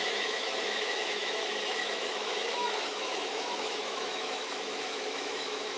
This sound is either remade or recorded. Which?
remade